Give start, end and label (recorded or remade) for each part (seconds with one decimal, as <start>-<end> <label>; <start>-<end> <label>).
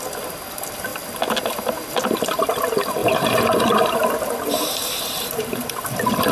0.0-3.0 recorded; 3.0-5.7 remade; 5.7-6.3 recorded